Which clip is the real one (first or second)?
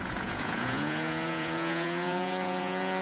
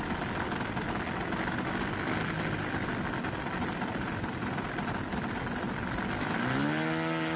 second